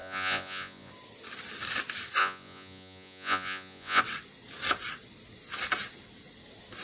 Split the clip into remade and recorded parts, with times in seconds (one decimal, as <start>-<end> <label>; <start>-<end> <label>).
0.0-0.9 remade; 0.9-2.2 recorded; 2.2-4.0 remade; 4.0-6.8 recorded